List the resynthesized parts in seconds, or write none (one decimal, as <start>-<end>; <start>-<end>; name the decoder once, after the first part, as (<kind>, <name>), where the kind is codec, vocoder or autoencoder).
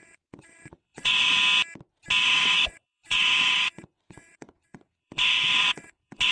0.0-1.4 (vocoder, WaveNeXt); 2.2-6.3